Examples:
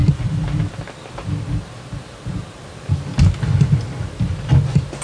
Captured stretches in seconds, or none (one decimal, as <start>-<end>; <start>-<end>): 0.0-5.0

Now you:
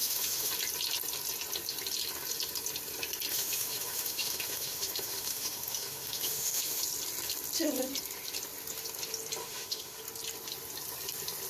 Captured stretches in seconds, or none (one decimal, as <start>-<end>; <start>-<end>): 0.5-3.3; 6.8-9.4; 10.0-11.5

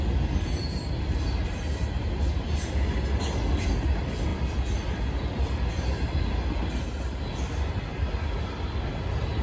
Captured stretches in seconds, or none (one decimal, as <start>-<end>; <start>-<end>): 0.0-9.4

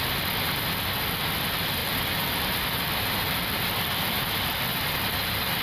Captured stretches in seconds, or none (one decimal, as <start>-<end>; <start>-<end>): 0.0-1.8; 4.2-5.6

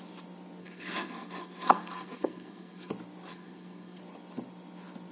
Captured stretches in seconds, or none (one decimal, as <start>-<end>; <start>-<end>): 0.0-0.6; 2.9-3.3; 4.0-5.1

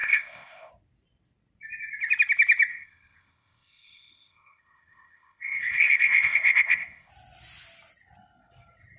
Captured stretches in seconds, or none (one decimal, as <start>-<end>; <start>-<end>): 0.7-2.7; 7.1-9.0